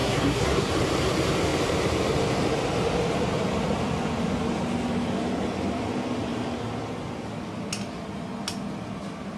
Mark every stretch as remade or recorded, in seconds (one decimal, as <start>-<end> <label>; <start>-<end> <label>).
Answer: 0.0-0.7 remade; 0.7-9.4 recorded